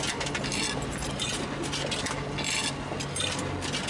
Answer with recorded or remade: recorded